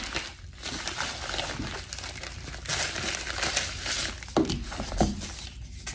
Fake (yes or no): no